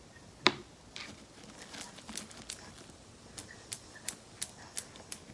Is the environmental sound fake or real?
real